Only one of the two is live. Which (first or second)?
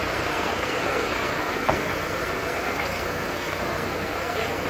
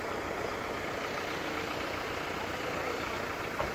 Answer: second